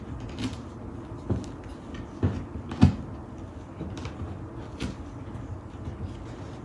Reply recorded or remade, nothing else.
recorded